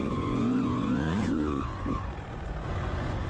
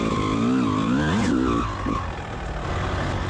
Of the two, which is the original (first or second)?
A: second